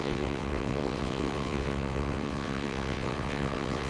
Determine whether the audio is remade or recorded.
remade